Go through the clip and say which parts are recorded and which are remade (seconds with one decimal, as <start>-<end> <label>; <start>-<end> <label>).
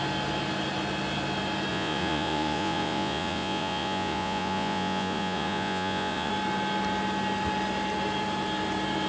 0.0-1.7 recorded; 1.7-6.3 remade; 6.3-9.1 recorded